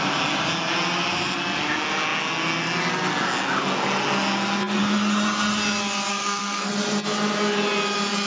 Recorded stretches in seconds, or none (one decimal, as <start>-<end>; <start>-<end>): 0.0-6.1; 6.7-8.3